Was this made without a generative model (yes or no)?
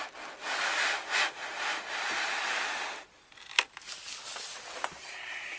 yes